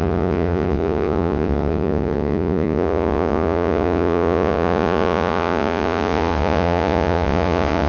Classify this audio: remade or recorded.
remade